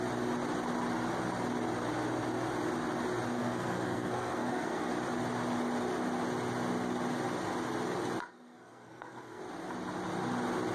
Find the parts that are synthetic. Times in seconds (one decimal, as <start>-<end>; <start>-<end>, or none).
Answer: 3.4-4.9; 8.3-9.4